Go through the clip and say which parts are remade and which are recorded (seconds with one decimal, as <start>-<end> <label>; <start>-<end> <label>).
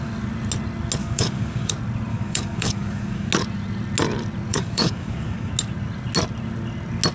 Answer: 0.0-1.0 recorded; 1.0-1.7 remade; 1.7-2.1 recorded; 2.1-3.3 remade; 3.3-4.5 recorded; 4.5-5.5 remade; 5.5-7.1 recorded